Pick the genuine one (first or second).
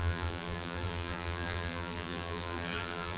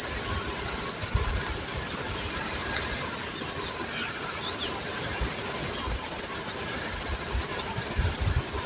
second